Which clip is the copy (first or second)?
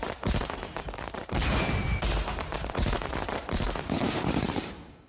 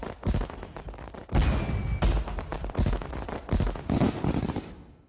first